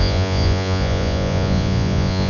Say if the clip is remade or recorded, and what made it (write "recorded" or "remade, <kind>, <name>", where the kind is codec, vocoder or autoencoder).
remade, vocoder, Vocos